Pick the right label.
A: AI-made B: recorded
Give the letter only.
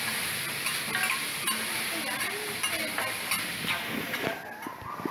B